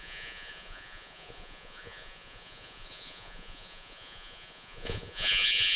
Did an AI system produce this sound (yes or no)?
yes